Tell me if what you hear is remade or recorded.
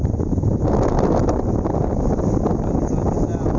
recorded